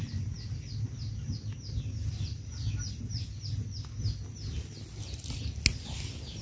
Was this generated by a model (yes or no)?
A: no